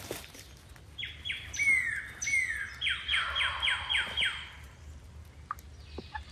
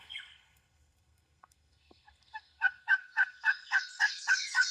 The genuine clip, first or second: first